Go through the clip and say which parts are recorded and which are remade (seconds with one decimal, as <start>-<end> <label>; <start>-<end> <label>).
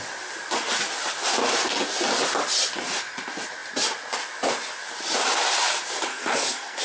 0.0-6.1 recorded; 6.1-6.8 remade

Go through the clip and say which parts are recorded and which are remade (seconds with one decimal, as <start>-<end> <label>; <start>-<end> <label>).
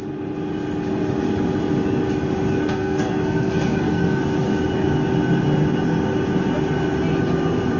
0.0-2.6 recorded; 2.6-4.2 remade; 4.2-7.8 recorded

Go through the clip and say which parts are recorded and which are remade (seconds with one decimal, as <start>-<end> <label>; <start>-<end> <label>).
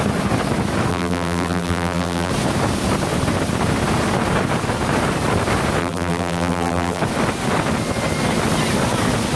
0.0-0.9 recorded; 0.9-2.3 remade; 2.3-5.8 recorded; 5.8-7.0 remade; 7.0-9.4 recorded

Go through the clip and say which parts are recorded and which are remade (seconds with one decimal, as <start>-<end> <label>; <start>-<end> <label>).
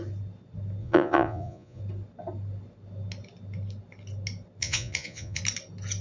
0.0-0.8 recorded; 0.8-1.8 remade; 1.8-4.6 recorded; 4.6-5.4 remade; 5.4-6.0 recorded